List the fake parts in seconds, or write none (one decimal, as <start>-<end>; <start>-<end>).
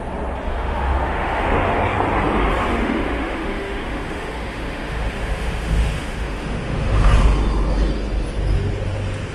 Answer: 0.5-1.8; 2.7-7.1